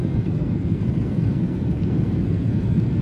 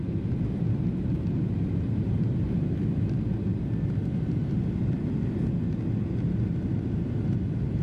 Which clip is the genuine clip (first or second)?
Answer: second